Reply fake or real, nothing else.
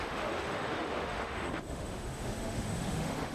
fake